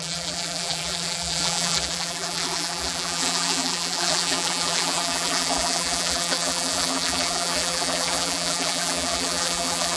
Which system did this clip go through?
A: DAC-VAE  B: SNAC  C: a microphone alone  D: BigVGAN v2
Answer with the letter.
D